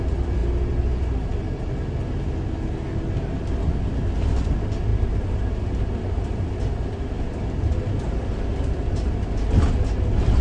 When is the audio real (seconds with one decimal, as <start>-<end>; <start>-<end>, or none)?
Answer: 0.0-10.4

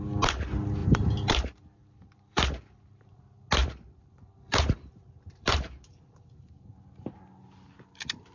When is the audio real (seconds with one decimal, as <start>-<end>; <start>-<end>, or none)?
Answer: 0.0-0.8; 3.2-3.6; 6.5-8.3

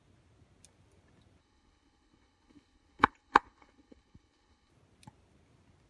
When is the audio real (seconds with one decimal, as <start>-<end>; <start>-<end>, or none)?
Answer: 0.0-1.4; 4.7-5.9

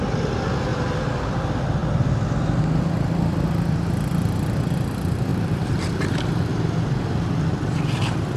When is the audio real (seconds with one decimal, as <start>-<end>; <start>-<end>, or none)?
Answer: 0.0-0.7; 1.2-5.3; 6.1-8.4

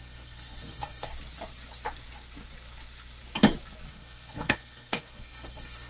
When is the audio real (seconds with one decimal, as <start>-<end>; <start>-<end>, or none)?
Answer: 1.1-3.9

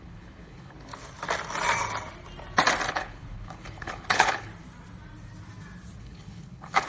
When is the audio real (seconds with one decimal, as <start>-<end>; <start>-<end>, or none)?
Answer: 0.9-2.9; 4.5-6.0

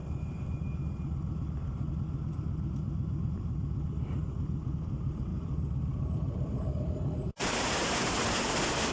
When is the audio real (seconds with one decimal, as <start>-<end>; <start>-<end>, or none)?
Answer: 0.0-1.9